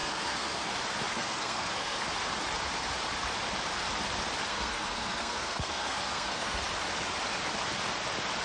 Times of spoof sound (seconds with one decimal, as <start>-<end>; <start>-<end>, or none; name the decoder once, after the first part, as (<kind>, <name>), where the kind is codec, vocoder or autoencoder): 0.0-0.7 (codec, SNAC); 1.1-2.0; 4.5-6.6